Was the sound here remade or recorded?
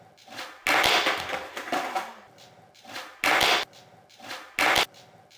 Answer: recorded